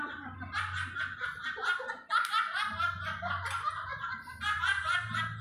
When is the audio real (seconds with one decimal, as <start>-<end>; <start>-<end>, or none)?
0.0-5.4